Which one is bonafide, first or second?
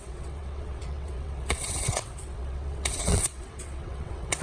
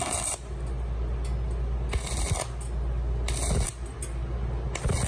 second